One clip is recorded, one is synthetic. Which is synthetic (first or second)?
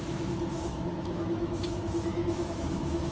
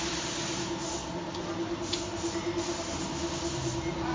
first